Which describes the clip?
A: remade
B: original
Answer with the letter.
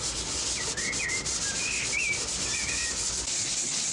B